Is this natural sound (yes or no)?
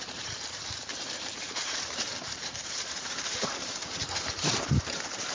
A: no